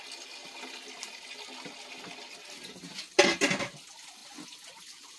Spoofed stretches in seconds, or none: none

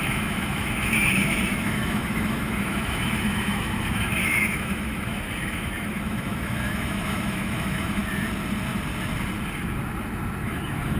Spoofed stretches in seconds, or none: 0.0-8.0 (autoencoder, DAC-VAE); 10.4-11.0

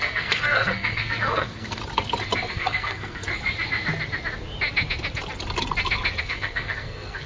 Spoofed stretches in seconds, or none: 0.0-1.8 (codec, SNAC); 2.5-3.3; 6.2-7.3

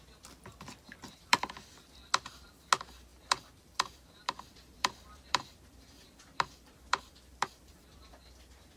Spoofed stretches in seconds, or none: 1.2-2.7 (vocoder, BigVGAN v2); 3.1-8.1